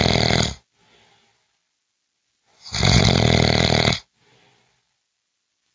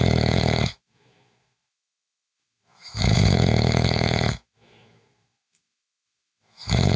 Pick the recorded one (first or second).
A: first